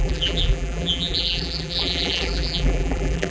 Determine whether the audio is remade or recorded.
remade